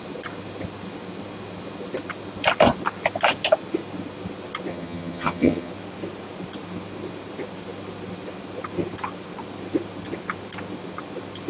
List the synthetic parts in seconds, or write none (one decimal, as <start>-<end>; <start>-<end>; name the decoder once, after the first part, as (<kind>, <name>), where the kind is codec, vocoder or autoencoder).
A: 4.7-5.7 (vocoder, HiFi-GAN)